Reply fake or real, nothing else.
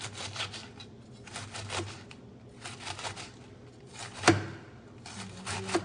real